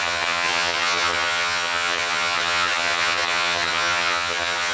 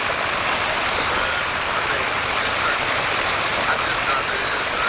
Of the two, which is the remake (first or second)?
first